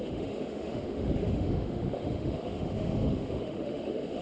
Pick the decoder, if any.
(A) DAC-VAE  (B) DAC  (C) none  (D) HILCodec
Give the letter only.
A